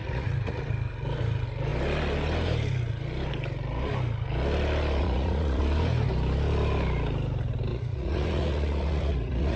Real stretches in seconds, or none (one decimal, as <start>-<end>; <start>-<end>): 0.6-5.0; 5.6-7.7